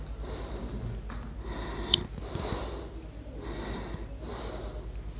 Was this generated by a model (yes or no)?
no